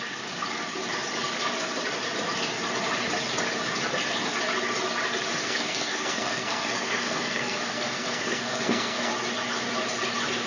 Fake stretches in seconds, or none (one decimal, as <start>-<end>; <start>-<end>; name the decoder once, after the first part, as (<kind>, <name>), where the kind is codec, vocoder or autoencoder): 5.4-9.1 (codec, SNAC)